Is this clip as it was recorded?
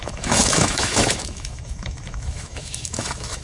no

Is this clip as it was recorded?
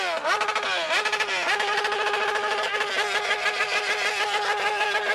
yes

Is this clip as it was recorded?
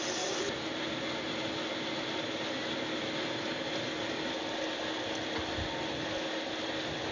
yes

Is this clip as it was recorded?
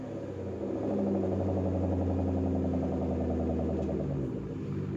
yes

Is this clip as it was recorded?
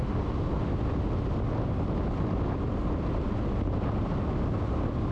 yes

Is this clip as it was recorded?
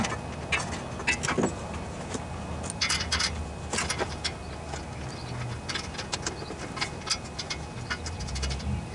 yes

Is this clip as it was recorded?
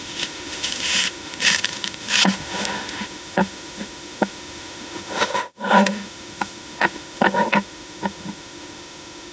no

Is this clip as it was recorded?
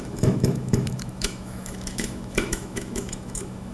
no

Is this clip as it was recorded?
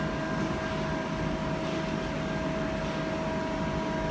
yes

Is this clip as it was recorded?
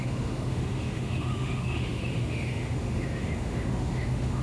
no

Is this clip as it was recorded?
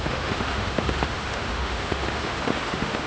no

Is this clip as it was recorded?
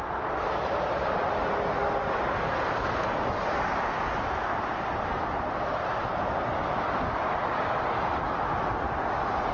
yes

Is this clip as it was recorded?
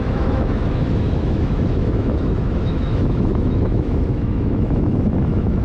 no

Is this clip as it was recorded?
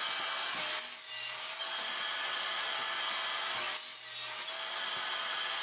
yes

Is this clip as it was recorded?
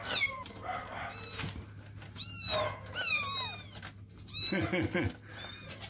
yes